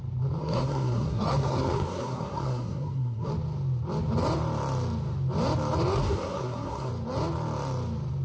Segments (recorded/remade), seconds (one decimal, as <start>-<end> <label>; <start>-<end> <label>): 0.0-0.4 recorded; 0.4-3.3 remade; 3.3-6.0 recorded; 6.0-6.9 remade; 6.9-8.2 recorded

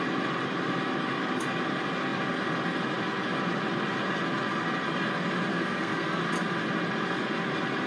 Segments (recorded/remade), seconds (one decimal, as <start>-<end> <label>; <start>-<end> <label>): 0.0-5.5 recorded; 5.5-6.2 remade; 6.2-7.9 recorded

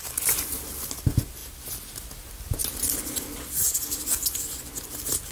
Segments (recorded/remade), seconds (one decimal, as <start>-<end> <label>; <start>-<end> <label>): 0.0-5.3 recorded

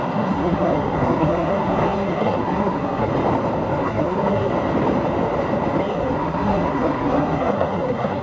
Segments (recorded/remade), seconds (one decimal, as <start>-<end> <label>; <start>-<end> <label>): 0.0-3.1 remade; 3.1-3.8 recorded; 3.8-4.5 remade; 4.5-5.8 recorded; 5.8-8.2 remade